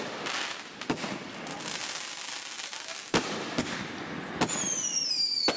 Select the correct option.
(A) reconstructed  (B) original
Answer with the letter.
B